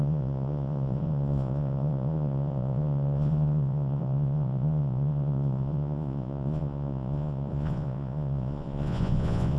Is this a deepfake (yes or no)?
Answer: yes